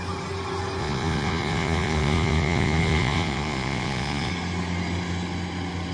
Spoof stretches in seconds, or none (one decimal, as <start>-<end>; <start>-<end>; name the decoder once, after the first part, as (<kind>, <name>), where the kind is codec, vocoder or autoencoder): 0.8-4.3 (vocoder, Vocos)